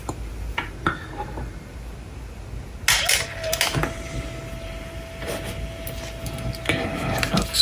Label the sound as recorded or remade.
recorded